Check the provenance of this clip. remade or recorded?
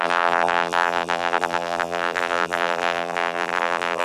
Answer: remade